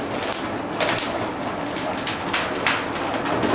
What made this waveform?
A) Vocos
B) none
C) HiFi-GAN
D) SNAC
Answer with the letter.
B